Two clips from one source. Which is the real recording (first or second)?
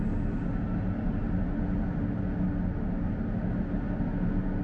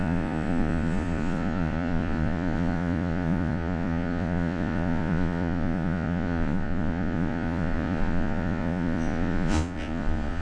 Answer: first